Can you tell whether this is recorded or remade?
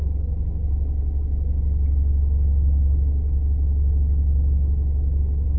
recorded